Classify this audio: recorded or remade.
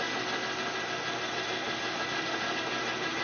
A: recorded